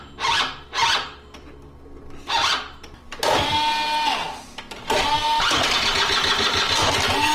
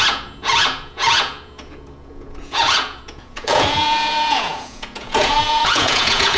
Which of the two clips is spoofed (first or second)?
second